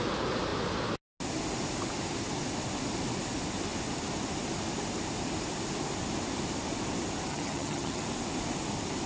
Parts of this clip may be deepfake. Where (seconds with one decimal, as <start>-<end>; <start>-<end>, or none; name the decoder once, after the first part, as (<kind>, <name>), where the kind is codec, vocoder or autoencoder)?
7.3-8.0 (vocoder, HiFi-GAN)